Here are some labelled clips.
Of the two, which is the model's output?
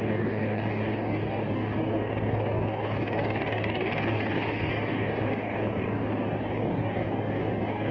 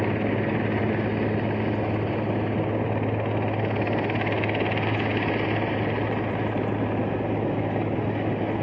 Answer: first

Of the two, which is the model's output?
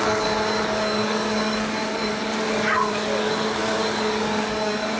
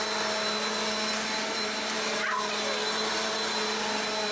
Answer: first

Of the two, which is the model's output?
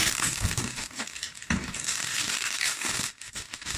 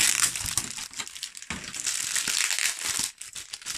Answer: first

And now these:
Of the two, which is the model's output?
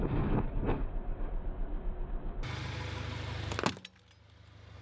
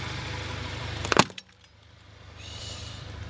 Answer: second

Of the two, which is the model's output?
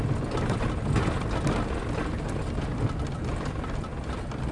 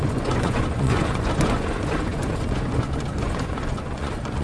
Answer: second